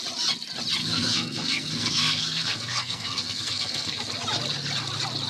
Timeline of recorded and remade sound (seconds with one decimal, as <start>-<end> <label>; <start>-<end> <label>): 0.0-0.8 recorded; 0.8-4.0 remade; 4.0-5.3 recorded